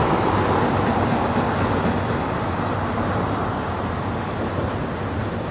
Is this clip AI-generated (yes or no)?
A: no